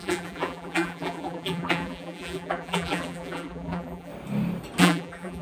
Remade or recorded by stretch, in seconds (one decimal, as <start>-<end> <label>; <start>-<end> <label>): 0.0-4.1 remade; 4.1-4.8 recorded; 4.8-5.4 remade